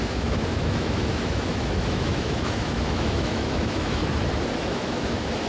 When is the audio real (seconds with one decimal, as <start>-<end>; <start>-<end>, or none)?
4.0-4.6